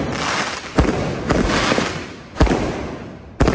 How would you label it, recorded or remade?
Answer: recorded